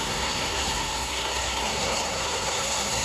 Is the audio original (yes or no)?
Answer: no